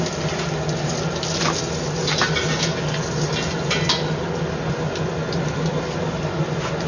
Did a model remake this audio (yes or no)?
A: no